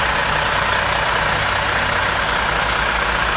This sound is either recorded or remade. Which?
recorded